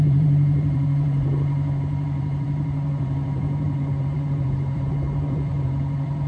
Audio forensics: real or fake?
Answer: fake